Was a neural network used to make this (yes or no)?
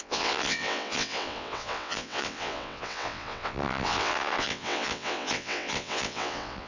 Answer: yes